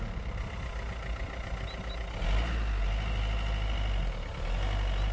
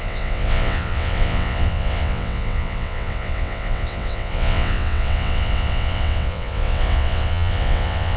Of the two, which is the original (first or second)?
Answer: first